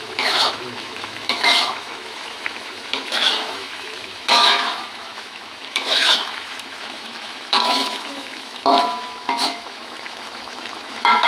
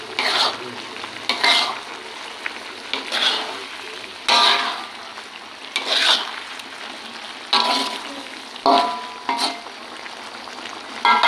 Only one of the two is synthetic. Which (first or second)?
first